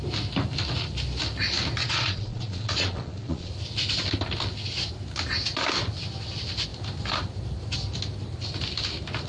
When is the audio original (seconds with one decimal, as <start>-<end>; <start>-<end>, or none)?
0.0-1.8; 3.5-9.3